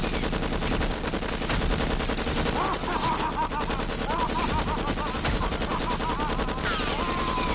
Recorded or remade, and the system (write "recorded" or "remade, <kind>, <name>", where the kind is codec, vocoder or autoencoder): recorded